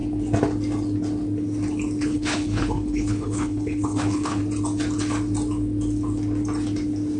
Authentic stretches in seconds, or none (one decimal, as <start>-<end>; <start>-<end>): 0.0-2.0; 4.4-7.2